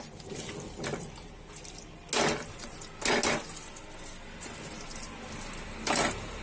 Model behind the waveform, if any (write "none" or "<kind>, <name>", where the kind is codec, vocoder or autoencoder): none